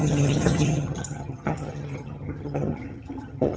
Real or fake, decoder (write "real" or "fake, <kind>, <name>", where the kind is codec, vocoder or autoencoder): fake, vocoder, HiFi-GAN